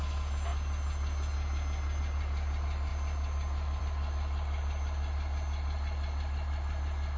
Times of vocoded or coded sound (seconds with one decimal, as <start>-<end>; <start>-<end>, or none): none